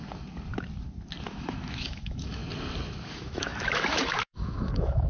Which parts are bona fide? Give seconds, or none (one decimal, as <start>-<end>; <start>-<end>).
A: 0.0-1.2; 2.4-3.1